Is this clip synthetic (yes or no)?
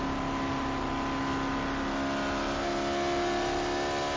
no